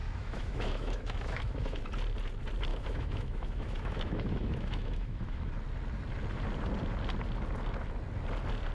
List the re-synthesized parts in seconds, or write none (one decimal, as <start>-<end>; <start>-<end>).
0.0-1.8; 2.7-5.5